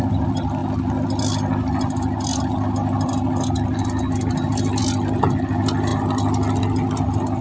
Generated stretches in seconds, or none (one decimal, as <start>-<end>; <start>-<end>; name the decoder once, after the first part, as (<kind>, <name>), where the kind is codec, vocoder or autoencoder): none